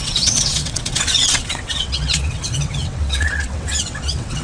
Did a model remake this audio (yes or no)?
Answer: yes